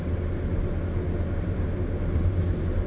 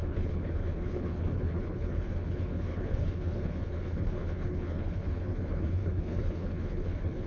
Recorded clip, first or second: first